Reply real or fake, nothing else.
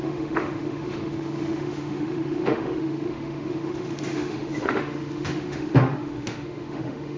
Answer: fake